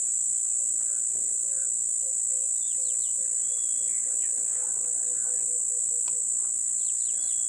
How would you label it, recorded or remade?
recorded